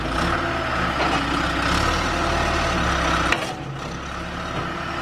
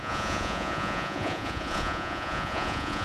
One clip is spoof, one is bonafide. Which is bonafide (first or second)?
first